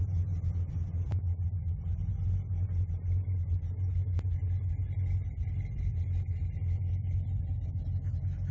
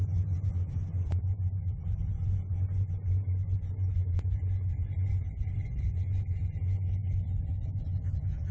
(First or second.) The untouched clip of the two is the first